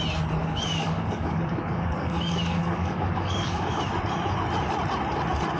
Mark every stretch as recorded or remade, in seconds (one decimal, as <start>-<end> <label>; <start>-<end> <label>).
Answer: 0.0-0.4 recorded; 0.4-3.8 remade; 3.8-5.6 recorded